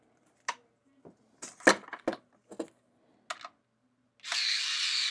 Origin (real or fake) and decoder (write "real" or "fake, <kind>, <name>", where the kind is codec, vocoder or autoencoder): real